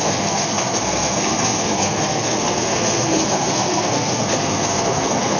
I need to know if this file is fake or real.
fake